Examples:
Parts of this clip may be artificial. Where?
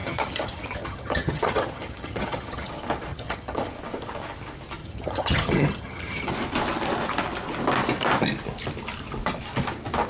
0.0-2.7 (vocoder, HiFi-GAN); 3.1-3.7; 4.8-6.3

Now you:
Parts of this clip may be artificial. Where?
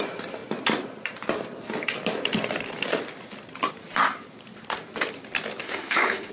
5.6-6.3 (autoencoder, DAC-VAE)